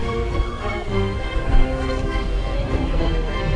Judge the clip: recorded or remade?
remade